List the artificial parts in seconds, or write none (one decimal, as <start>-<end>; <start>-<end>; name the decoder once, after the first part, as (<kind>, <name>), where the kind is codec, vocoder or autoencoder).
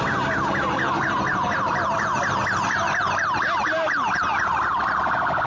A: none